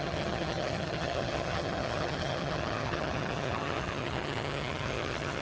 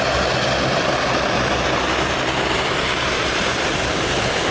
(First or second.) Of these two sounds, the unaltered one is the second